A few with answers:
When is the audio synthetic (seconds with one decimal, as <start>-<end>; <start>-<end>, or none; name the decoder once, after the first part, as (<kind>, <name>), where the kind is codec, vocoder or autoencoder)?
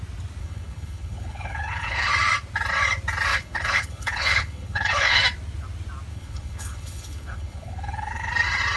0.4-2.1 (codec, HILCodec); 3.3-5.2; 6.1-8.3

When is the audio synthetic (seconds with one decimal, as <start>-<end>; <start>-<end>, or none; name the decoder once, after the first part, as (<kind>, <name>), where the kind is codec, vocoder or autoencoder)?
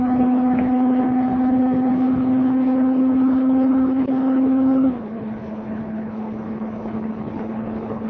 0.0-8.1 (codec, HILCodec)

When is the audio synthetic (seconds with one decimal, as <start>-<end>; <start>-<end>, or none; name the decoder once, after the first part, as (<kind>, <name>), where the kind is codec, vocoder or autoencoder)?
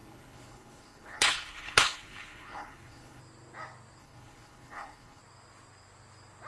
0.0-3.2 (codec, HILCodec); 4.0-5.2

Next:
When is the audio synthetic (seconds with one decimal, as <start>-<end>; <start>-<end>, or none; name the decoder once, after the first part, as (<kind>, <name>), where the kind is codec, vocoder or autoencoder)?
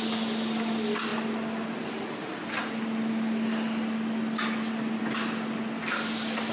none